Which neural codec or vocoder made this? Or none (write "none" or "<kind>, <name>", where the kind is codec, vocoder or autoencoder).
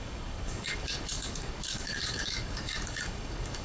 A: codec, DAC